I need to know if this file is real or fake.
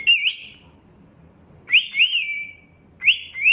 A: real